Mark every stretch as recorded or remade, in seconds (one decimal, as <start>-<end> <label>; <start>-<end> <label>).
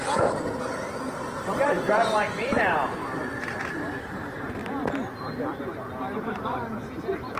0.0-3.0 remade; 3.0-3.6 recorded; 3.6-4.6 remade; 4.6-6.2 recorded; 6.2-7.4 remade